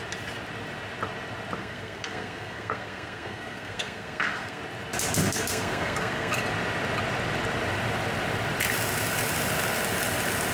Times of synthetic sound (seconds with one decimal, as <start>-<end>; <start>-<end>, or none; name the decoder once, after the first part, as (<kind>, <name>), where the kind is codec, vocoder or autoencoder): 1.6-4.6 (codec, SNAC); 5.2-6.4